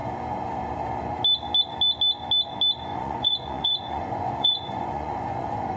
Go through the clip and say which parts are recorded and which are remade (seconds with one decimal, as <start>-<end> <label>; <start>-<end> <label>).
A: 0.0-2.9 recorded; 2.9-5.8 remade